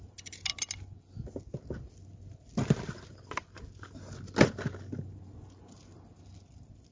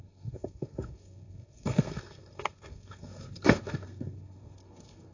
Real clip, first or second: first